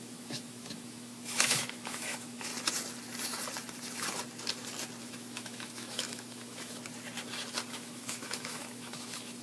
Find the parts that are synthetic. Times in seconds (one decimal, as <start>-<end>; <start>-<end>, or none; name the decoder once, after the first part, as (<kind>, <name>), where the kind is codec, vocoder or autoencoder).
0.0-2.5 (autoencoder, DAC-VAE); 5.0-6.8; 7.7-9.4